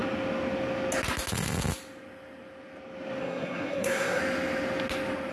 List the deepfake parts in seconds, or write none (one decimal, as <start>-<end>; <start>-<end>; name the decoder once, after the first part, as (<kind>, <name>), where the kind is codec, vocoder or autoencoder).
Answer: 3.2-4.2 (codec, SNAC)